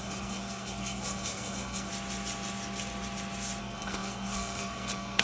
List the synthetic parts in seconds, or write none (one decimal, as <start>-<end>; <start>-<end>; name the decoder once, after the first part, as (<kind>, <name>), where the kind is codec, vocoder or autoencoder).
0.0-1.9 (codec, SNAC); 3.6-5.2